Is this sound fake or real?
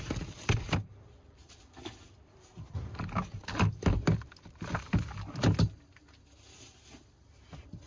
real